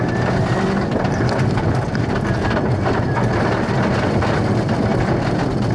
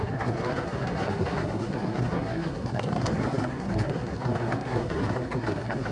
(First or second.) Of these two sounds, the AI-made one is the second